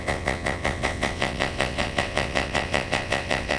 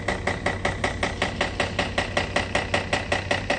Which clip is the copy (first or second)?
first